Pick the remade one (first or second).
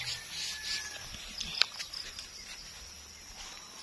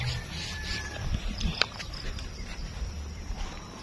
second